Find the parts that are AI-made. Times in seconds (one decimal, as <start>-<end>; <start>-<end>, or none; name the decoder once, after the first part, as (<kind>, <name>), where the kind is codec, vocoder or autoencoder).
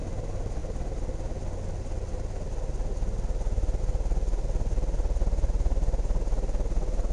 none